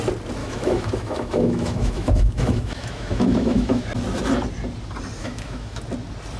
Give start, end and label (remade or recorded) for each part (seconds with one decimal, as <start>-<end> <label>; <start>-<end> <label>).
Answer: 0.0-0.4 recorded; 0.4-3.8 remade; 3.8-5.2 recorded; 5.2-5.8 remade; 5.8-6.4 recorded